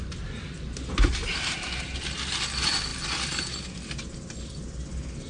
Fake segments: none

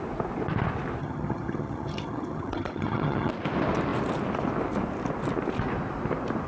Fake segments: 1.0-3.3 (vocoder, HiFi-GAN)

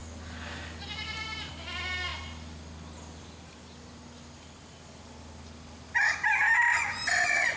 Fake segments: 6.7-7.6 (vocoder, Vocos)

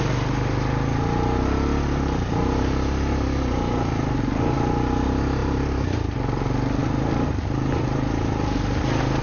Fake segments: none

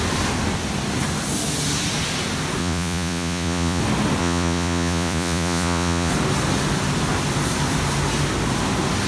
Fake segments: 2.6-3.8 (vocoder, Vocos); 4.2-6.1

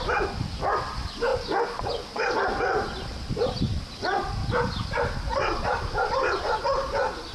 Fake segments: 0.0-1.3 (vocoder, BigVGAN v2); 3.5-4.4; 5.2-7.3

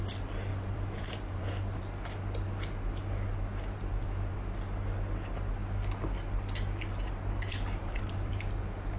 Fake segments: 0.5-1.8 (vocoder, BigVGAN v2); 3.5-4.4; 7.8-8.3